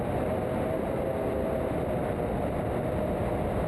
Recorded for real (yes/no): yes